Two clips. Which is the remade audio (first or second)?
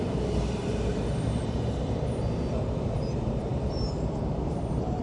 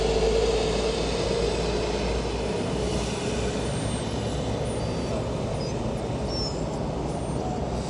first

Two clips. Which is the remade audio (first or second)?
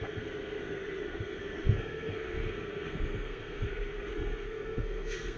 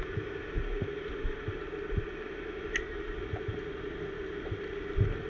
first